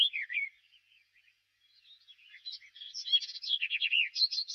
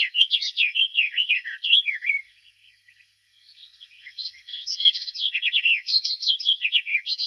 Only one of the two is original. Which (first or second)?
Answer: first